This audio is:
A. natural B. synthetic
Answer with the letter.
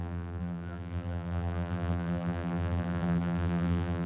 B